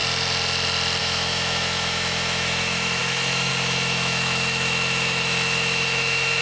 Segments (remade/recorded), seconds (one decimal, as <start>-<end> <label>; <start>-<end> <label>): 0.0-1.0 recorded; 1.0-6.4 remade